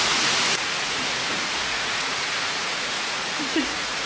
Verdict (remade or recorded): remade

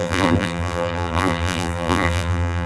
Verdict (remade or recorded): remade